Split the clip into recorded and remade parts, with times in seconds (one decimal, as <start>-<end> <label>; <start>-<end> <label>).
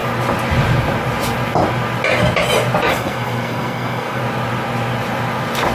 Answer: 0.0-2.9 recorded; 2.9-4.2 remade; 4.2-5.7 recorded